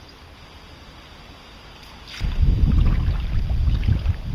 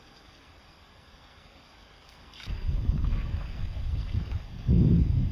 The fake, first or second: second